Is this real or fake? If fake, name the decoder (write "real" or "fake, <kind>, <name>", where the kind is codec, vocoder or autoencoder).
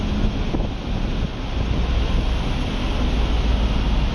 real